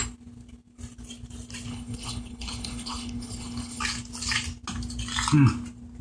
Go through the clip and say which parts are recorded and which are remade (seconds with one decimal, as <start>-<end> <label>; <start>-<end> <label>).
0.0-1.7 recorded; 1.7-3.8 remade; 3.8-6.0 recorded